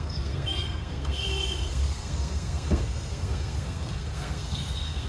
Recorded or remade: remade